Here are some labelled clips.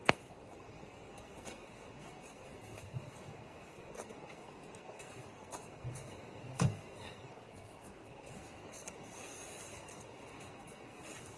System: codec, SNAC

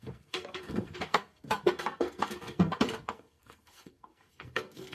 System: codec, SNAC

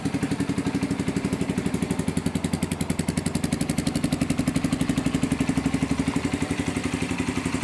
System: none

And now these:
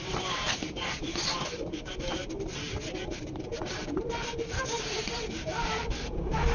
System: vocoder, BigVGAN v2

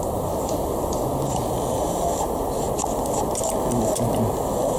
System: none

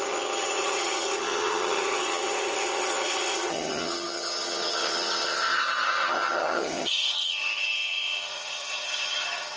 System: vocoder, HiFi-GAN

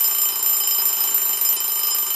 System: none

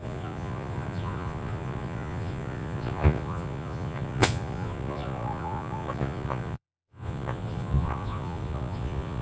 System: vocoder, Vocos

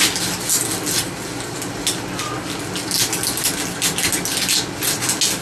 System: none